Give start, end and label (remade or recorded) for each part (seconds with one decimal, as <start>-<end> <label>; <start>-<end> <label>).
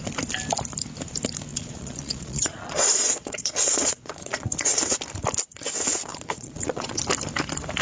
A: 0.0-1.5 recorded; 1.5-4.5 remade; 4.5-6.1 recorded; 6.1-7.0 remade; 7.0-7.8 recorded